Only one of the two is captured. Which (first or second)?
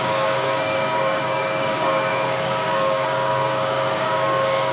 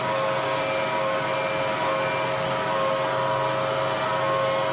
second